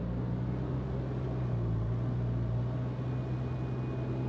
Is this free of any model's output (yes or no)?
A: yes